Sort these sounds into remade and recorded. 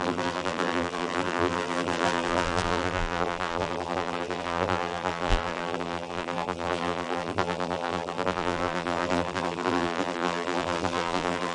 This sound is remade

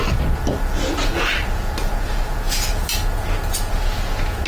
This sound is recorded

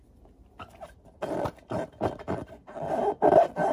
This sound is remade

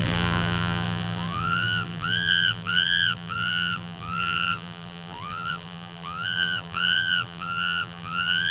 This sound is remade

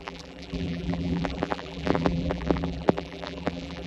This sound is remade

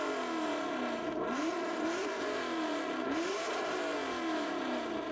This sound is remade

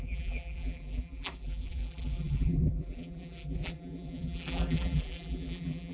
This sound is remade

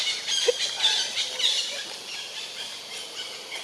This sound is recorded